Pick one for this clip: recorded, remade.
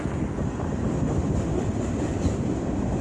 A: recorded